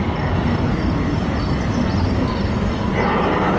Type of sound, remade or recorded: recorded